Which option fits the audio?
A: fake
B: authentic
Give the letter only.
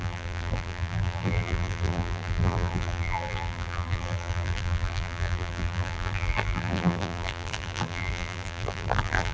A